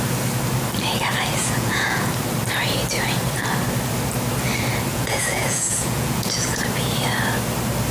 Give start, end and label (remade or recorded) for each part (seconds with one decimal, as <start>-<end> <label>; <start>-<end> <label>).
0.0-1.4 recorded; 1.4-2.1 remade; 2.1-4.9 recorded; 4.9-6.6 remade; 6.6-7.9 recorded